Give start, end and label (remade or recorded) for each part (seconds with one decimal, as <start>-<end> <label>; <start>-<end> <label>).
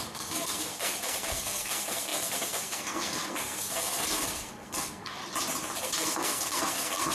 0.0-5.2 remade; 5.2-5.8 recorded; 5.8-7.1 remade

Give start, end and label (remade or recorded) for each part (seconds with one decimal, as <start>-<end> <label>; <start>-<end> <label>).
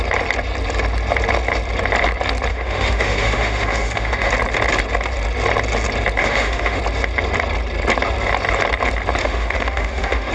0.0-2.5 recorded; 2.5-4.3 remade; 4.3-6.2 recorded; 6.2-6.8 remade; 6.8-9.2 recorded; 9.2-10.3 remade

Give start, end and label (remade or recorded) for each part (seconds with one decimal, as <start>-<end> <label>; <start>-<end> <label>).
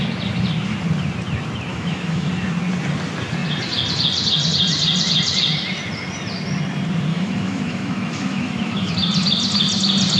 0.0-1.7 recorded; 1.7-2.3 remade; 2.3-7.1 recorded; 7.1-8.9 remade; 8.9-10.2 recorded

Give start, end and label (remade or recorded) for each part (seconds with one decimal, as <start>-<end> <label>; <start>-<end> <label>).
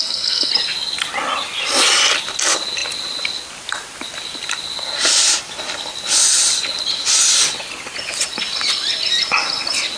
0.0-0.5 remade; 0.5-10.0 recorded